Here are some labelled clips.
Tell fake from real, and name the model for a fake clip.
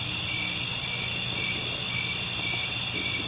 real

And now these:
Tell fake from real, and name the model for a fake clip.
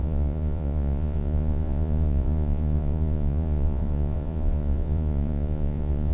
fake, vocoder, Vocos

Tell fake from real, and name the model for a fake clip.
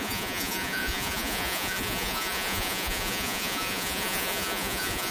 fake, vocoder, Vocos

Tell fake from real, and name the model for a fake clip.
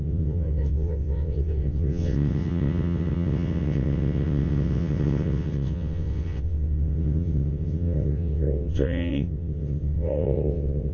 fake, vocoder, WaveNeXt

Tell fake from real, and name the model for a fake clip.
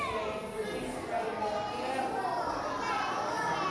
real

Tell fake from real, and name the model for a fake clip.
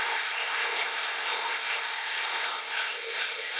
fake, codec, ZipCodec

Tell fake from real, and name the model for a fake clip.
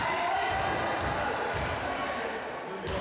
real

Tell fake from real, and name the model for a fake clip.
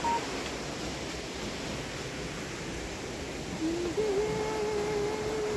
real